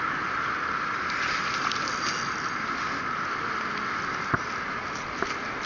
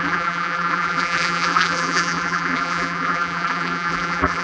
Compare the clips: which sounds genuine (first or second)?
first